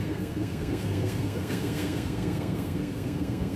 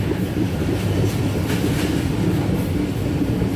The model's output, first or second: first